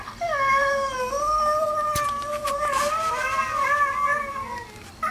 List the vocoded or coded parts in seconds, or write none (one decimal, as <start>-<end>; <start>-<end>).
2.3-3.4